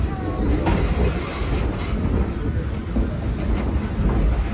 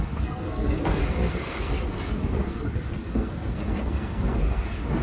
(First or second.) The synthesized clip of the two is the second